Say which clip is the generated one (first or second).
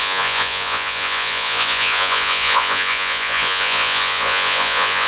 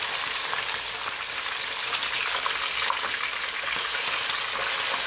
first